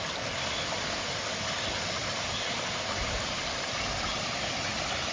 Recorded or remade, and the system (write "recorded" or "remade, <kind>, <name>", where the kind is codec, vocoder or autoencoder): recorded